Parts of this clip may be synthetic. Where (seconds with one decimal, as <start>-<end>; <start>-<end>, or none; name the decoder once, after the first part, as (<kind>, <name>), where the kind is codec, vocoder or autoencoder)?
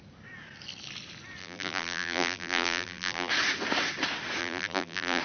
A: 1.4-3.3 (vocoder, BigVGAN v2); 4.4-5.2